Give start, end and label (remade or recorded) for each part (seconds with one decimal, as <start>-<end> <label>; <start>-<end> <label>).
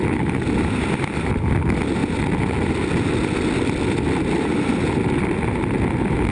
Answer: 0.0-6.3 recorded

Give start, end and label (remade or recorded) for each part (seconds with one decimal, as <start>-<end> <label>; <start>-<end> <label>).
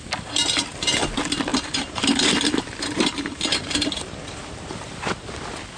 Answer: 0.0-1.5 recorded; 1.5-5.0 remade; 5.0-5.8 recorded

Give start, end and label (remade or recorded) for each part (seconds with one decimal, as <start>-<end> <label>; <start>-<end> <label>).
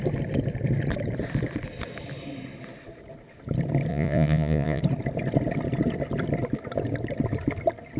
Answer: 0.0-3.9 recorded; 3.9-4.8 remade; 4.8-8.0 recorded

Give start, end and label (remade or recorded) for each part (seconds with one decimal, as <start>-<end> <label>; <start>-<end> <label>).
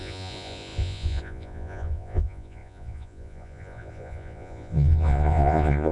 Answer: 0.0-5.9 remade